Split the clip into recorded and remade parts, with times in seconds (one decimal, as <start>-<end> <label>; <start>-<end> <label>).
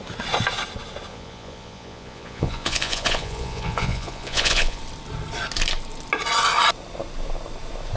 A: 0.0-1.1 recorded; 1.1-4.8 remade; 4.8-8.0 recorded